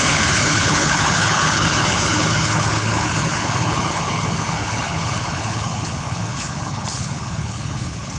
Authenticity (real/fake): fake